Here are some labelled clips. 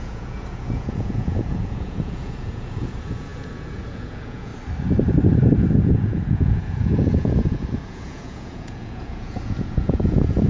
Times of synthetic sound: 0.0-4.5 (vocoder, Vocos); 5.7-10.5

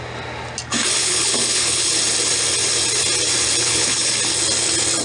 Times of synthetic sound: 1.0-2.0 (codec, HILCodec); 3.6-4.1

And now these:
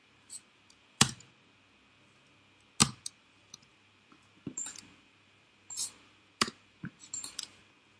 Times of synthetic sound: 0.0-1.3 (vocoder, BigVGAN v2); 2.8-7.6

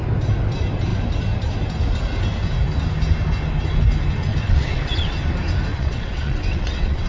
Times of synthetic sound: 4.3-5.1 (vocoder, WaveNeXt); 5.7-7.1

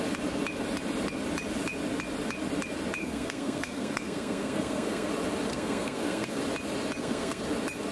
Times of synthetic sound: 3.0-5.1 (codec, SNAC); 5.5-6.4; 7.0-7.5

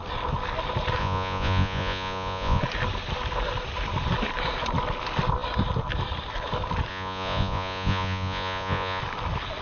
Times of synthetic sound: 1.0-2.6 (vocoder, Vocos); 6.9-9.0

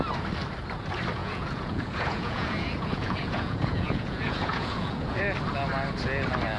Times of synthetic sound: 1.2-5.2 (vocoder, Vocos)

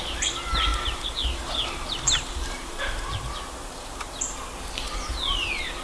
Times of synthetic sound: 0.7-4.2 (vocoder, BigVGAN v2)